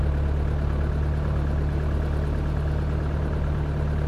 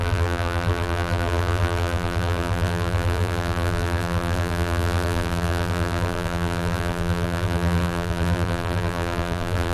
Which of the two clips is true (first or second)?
first